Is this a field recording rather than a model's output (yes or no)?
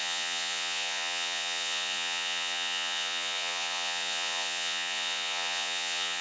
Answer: no